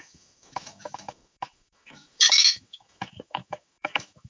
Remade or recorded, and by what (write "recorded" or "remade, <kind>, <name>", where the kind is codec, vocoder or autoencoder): remade, autoencoder, DAC-VAE